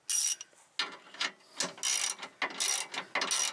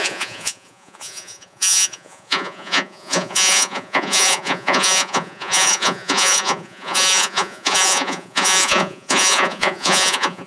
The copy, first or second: second